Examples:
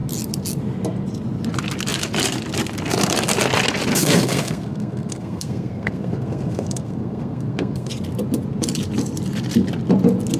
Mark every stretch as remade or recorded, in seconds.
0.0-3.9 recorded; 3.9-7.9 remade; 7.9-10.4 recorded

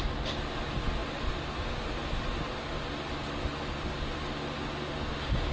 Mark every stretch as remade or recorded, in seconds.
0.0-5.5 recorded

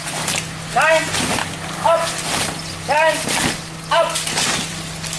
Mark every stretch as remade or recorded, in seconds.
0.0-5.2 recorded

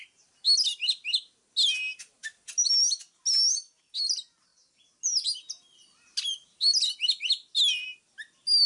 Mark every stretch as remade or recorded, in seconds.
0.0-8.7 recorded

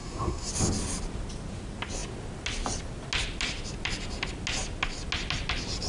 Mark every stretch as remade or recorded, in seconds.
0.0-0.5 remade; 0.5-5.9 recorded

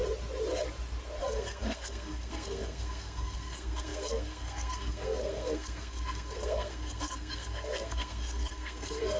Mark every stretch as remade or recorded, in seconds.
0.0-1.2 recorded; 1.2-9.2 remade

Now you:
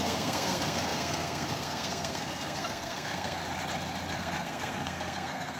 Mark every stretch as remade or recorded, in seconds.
0.0-3.4 remade; 3.4-4.1 recorded; 4.1-5.6 remade